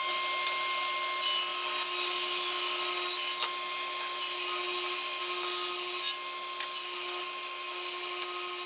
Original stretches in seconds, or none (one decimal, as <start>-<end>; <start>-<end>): 0.0-8.7